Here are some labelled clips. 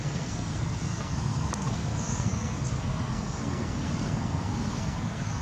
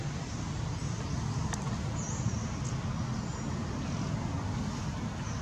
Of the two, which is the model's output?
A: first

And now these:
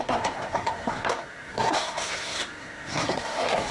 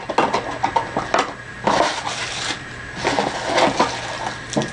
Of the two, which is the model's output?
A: first